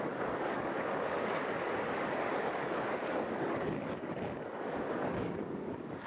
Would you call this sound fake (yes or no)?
yes